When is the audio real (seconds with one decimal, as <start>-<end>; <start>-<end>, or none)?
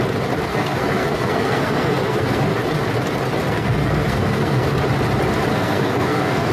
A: 0.0-0.5; 2.4-3.4; 4.7-5.5